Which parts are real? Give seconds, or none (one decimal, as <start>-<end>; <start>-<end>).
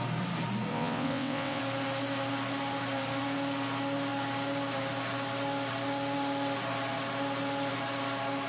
0.0-0.7; 1.6-8.5